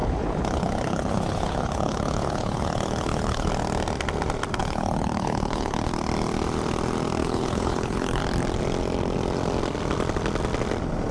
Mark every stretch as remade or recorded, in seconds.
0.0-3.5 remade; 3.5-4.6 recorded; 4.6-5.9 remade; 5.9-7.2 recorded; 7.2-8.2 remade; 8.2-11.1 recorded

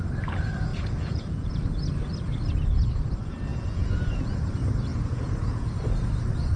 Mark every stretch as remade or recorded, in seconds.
0.0-0.7 recorded; 0.7-1.5 remade; 1.5-3.5 recorded; 3.5-4.2 remade; 4.2-4.9 recorded; 4.9-5.7 remade; 5.7-6.6 recorded

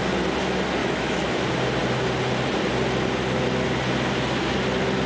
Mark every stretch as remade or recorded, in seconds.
0.0-0.8 recorded; 0.8-1.3 remade; 1.3-5.1 recorded

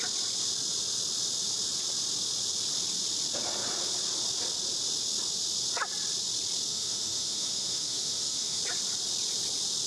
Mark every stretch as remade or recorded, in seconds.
0.0-6.7 recorded; 6.7-8.6 remade; 8.6-9.9 recorded

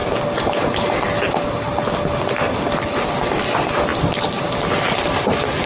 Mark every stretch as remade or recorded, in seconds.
0.0-5.7 recorded

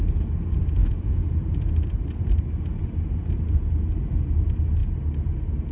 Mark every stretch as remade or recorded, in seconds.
0.0-5.7 recorded